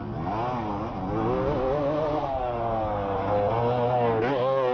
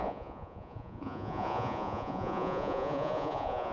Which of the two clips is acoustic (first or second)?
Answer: first